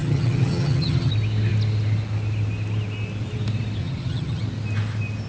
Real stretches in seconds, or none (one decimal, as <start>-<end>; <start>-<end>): 1.1-3.8; 4.4-5.3